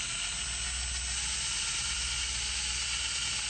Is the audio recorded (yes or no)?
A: yes